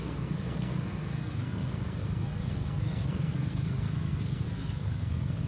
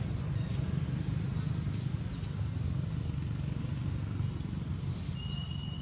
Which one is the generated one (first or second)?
first